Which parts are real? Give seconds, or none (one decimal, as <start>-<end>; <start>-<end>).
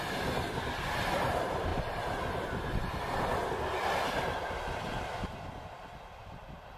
0.0-6.8